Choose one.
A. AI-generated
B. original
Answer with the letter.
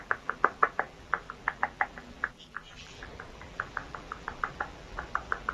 A